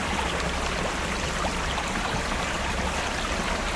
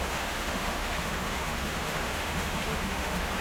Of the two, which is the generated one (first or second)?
second